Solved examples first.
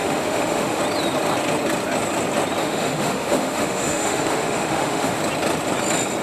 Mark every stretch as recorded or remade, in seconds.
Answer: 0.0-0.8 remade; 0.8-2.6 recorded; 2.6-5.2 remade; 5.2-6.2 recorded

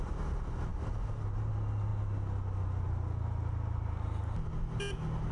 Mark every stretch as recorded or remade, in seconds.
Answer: 0.0-5.3 recorded

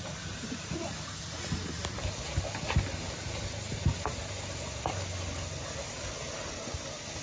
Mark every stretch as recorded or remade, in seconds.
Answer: 0.0-0.4 recorded; 0.4-1.5 remade; 1.5-7.2 recorded

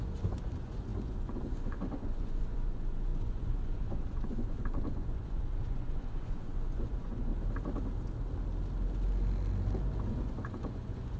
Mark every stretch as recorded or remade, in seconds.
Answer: 0.0-7.3 remade; 7.3-10.1 recorded; 10.1-11.2 remade

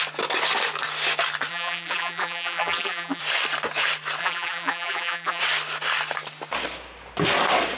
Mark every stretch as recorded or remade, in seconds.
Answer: 0.0-1.5 recorded; 1.5-3.2 remade; 3.2-4.2 recorded; 4.2-5.4 remade; 5.4-7.8 recorded

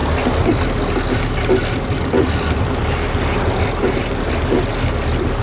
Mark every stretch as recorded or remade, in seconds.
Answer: 0.0-5.4 recorded

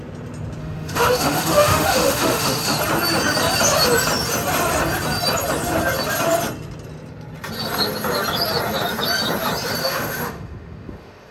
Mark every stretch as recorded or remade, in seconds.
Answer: 0.0-0.6 recorded; 0.6-2.8 remade; 2.8-9.8 recorded; 9.8-11.3 remade